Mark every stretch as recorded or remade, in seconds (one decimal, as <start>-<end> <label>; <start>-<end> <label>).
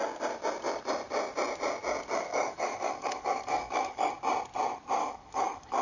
0.0-2.3 recorded; 2.3-4.1 remade; 4.1-5.0 recorded; 5.0-5.8 remade